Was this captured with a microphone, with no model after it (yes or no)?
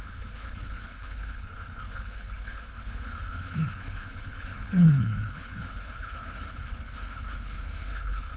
no